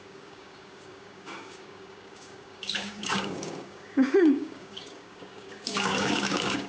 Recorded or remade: remade